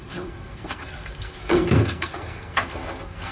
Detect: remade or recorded remade